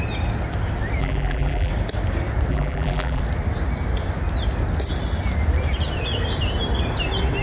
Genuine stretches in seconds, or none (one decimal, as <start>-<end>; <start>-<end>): 0.0-1.0; 1.7-2.5; 3.2-7.4